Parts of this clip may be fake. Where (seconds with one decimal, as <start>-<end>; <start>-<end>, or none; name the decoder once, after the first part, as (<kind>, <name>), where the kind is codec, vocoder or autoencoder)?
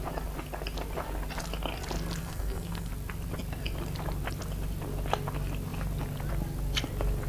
2.2-2.9 (codec, SNAC)